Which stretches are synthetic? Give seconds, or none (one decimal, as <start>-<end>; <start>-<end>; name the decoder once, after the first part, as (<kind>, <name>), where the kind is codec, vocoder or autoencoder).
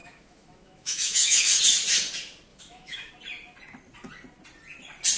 0.0-1.6 (autoencoder, DAC-VAE); 2.5-3.1